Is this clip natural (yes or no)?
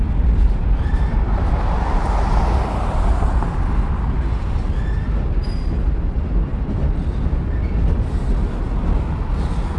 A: yes